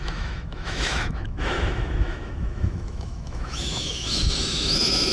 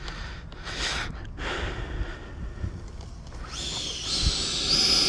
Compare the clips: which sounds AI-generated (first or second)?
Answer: first